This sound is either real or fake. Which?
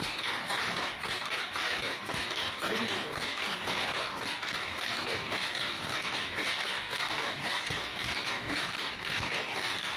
fake